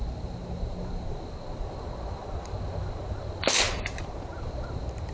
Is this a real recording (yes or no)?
yes